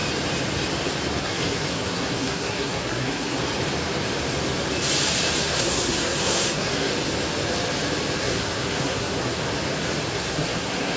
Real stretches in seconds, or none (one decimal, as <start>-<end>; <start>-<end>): 0.0-1.2; 3.4-5.4; 6.9-8.2; 9.4-10.1